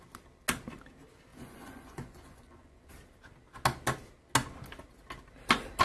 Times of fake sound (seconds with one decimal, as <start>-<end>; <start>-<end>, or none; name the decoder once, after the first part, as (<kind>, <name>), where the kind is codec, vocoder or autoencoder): 1.3-2.9 (vocoder, Vocos)